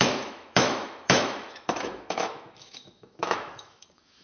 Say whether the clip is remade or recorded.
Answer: remade